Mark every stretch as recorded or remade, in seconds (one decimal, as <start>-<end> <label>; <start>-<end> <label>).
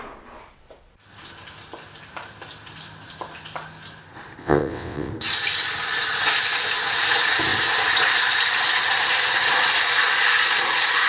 0.0-4.4 recorded; 4.4-5.1 remade; 5.1-11.1 recorded